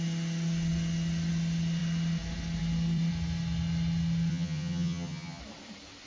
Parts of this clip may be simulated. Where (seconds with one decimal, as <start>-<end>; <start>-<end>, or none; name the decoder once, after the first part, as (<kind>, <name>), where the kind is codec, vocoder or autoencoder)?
4.3-5.4 (vocoder, HiFi-GAN)